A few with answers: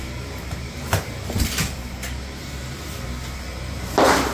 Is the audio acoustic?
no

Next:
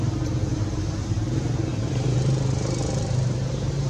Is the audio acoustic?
no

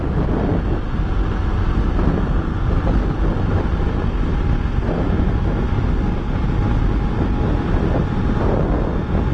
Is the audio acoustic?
yes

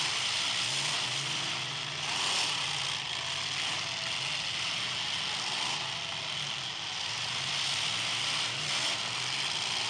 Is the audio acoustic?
yes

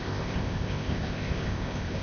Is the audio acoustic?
no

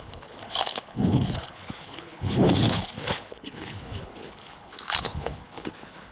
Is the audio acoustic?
no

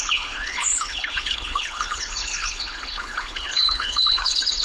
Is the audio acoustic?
no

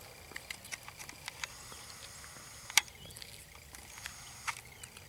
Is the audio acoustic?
yes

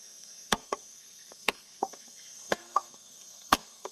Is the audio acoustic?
no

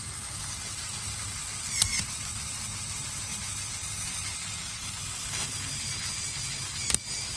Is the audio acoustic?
yes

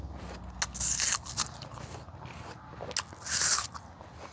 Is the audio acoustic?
yes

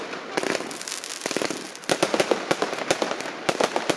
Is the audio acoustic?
yes